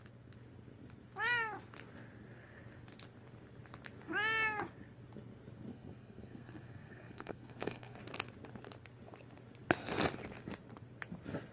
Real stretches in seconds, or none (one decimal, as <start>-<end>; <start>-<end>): 0.0-5.7; 8.0-11.5